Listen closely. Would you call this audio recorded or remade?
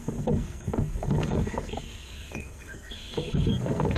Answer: remade